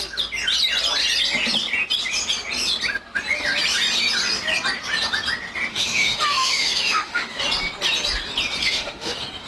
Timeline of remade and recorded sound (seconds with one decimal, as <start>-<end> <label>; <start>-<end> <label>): 0.0-5.7 recorded; 5.7-7.4 remade; 7.4-8.6 recorded; 8.6-9.1 remade; 9.1-9.5 recorded